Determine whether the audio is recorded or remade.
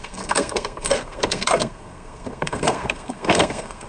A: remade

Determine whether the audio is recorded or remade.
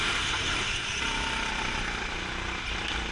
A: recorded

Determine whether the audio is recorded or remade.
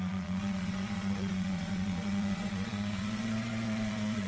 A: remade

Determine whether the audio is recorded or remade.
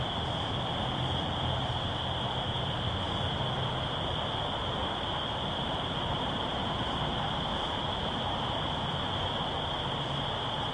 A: recorded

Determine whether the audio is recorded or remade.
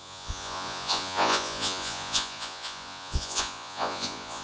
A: remade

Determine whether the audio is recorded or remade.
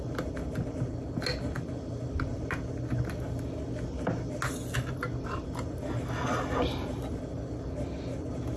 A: recorded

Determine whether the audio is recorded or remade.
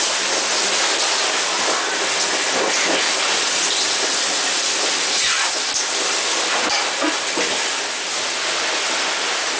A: recorded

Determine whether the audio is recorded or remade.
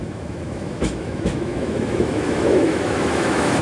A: remade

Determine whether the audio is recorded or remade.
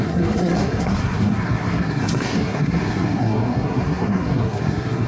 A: remade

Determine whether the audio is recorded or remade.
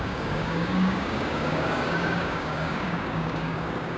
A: remade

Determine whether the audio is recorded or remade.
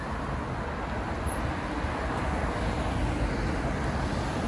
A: recorded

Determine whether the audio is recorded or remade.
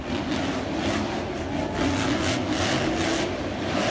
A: recorded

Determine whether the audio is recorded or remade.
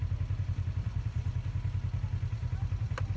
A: recorded